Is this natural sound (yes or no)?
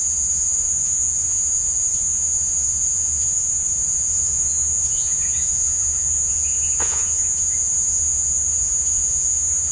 no